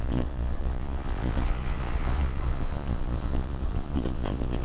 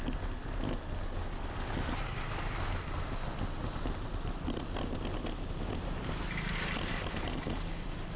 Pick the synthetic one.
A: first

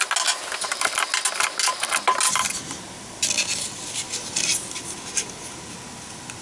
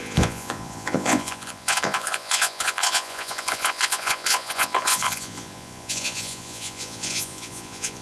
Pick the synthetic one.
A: second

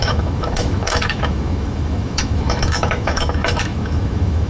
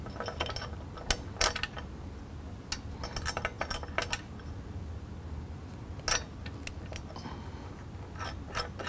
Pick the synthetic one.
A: first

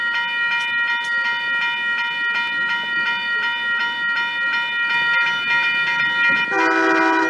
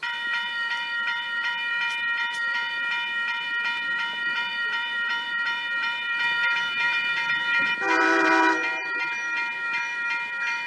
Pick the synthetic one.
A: second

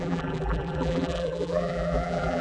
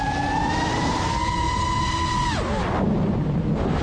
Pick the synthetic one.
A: first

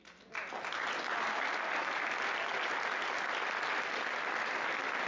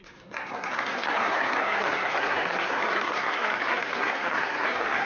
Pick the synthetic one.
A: second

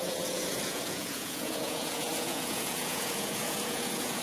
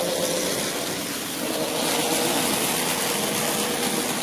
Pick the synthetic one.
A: first